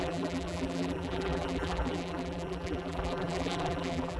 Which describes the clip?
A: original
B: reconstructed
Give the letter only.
B